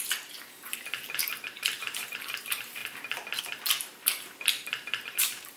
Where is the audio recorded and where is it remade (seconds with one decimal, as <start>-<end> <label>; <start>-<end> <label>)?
0.0-2.8 remade; 2.8-3.4 recorded; 3.4-5.6 remade